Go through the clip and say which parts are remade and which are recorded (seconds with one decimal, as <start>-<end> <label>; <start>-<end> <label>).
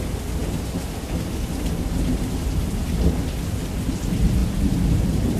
0.0-5.4 recorded